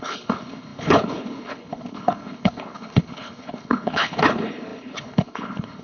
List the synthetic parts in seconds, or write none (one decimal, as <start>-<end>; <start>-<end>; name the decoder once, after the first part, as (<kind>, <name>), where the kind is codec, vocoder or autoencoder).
0.0-5.8 (codec, HILCodec)